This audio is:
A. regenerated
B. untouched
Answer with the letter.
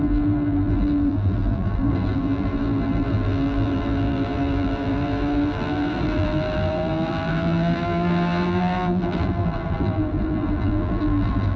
A